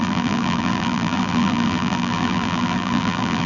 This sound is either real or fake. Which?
fake